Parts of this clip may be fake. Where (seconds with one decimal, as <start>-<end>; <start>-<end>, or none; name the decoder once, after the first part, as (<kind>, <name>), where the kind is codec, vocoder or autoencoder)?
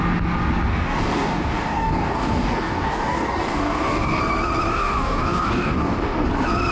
0.7-4.2 (codec, DAC); 4.7-6.3